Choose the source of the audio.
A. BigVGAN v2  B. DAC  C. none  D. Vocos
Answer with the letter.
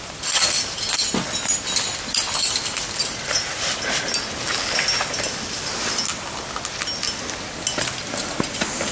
C